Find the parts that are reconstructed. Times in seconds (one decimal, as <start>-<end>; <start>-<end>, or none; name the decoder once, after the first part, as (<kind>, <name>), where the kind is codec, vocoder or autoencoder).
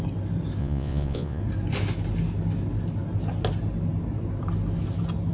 0.6-1.4 (vocoder, Vocos)